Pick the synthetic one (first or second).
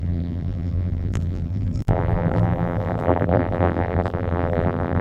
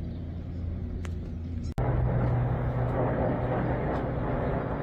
first